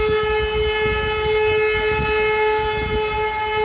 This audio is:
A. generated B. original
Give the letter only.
B